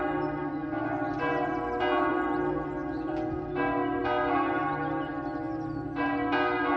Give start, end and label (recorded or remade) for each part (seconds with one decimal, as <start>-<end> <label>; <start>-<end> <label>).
0.0-6.8 recorded